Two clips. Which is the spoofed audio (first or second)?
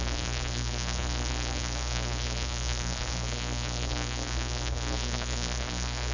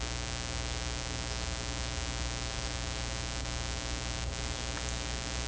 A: first